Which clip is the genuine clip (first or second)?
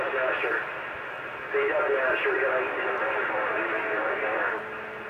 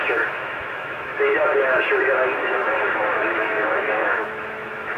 first